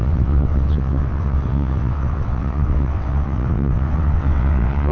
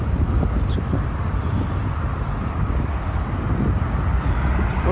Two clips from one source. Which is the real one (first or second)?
second